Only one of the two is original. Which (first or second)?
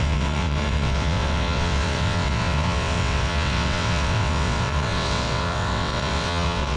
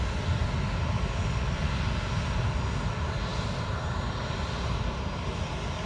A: second